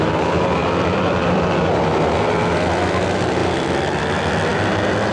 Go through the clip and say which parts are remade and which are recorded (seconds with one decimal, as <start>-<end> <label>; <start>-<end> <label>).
0.0-0.6 recorded; 0.6-1.8 remade; 1.8-3.4 recorded; 3.4-4.0 remade; 4.0-5.1 recorded